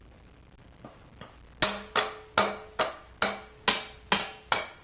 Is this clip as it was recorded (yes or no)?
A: yes